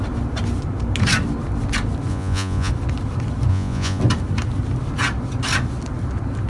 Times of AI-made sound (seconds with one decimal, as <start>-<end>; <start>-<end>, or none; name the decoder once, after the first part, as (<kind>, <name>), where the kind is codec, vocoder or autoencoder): 2.1-2.7 (vocoder, Vocos); 3.5-4.0